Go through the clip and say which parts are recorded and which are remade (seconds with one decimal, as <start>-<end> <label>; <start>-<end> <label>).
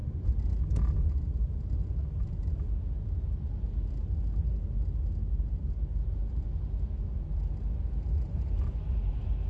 0.0-9.5 recorded